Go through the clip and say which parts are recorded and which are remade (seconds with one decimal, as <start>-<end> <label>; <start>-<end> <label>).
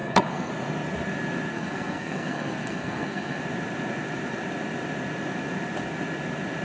0.0-0.5 remade; 0.5-1.5 recorded; 1.5-3.4 remade; 3.4-6.6 recorded